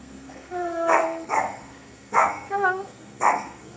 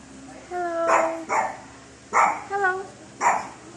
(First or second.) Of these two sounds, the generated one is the first